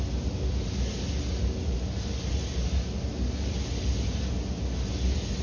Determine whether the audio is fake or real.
real